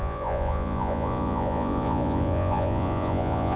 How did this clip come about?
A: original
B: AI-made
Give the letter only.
B